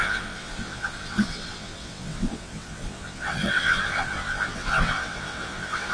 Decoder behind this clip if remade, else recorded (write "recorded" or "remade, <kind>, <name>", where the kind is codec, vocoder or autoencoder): remade, vocoder, WaveNeXt